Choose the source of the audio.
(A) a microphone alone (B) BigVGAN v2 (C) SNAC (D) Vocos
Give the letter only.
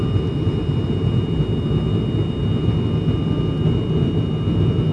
A